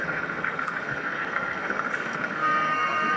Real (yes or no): no